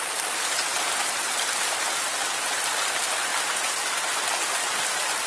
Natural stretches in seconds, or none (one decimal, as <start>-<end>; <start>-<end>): 0.0-5.3